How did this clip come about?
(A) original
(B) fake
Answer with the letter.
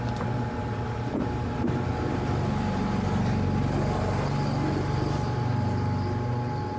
A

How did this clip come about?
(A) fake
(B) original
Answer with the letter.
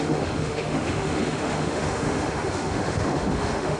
A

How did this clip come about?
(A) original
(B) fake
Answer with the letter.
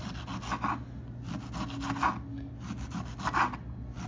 A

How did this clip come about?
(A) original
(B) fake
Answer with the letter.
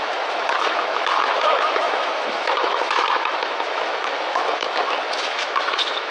B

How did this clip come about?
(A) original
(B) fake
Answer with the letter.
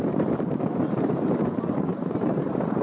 B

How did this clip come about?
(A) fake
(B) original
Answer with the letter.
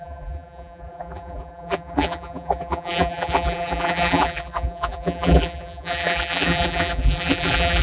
A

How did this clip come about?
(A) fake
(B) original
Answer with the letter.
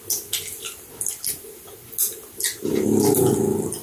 B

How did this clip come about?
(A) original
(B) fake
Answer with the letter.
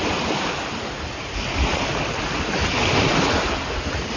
A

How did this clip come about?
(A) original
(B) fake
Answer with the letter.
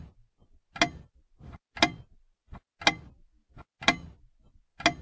A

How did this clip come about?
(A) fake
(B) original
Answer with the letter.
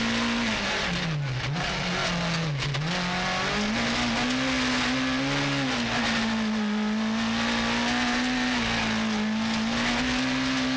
B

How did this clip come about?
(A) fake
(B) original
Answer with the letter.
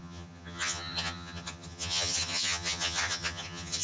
A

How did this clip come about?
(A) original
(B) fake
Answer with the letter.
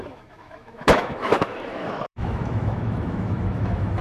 B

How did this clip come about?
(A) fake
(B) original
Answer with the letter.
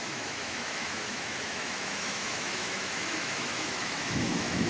A